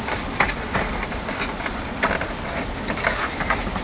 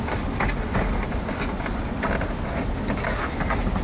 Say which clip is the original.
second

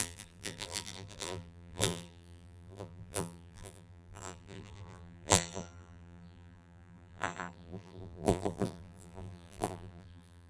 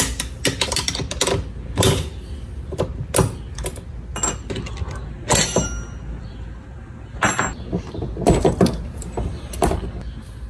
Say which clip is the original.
second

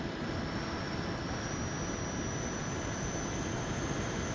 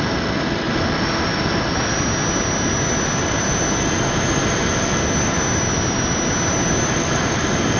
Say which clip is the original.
second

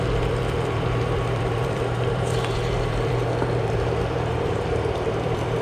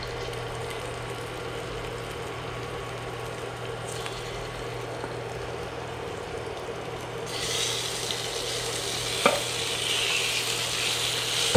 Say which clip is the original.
second